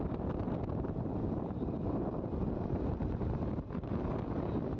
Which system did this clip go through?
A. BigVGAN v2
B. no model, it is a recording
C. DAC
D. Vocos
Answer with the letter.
B